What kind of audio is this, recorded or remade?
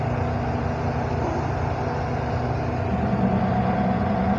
recorded